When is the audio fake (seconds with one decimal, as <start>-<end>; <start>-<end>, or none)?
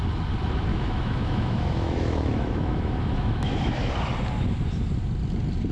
0.7-3.9